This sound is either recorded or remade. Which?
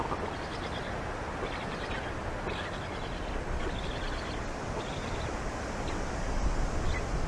recorded